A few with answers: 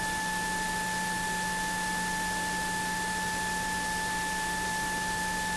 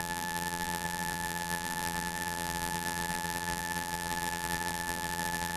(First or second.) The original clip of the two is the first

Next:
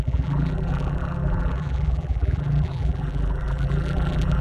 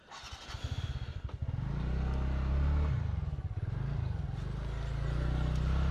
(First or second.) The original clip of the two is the second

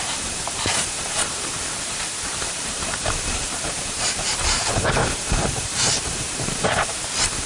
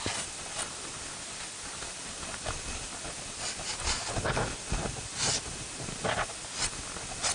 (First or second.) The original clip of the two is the second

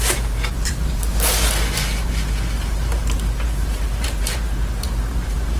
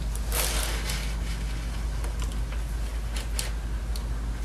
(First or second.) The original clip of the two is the second